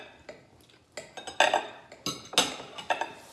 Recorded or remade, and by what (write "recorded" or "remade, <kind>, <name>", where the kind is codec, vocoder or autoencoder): recorded